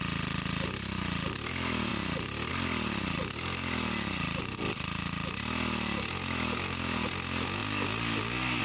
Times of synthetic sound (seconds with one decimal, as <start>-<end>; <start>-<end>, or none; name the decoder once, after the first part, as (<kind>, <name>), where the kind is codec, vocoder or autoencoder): none